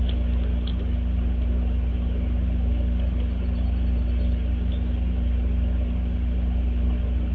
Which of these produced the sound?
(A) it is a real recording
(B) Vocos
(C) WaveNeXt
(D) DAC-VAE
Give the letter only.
A